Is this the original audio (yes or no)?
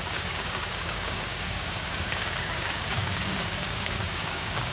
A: no